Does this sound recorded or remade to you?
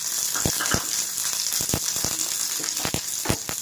remade